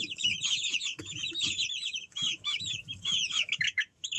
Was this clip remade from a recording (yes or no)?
yes